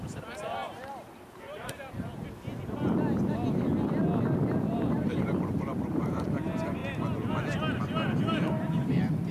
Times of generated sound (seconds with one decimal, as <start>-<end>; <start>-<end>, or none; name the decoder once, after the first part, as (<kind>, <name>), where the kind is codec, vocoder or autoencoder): 0.0-2.2 (vocoder, BigVGAN v2); 4.8-6.8; 8.2-9.3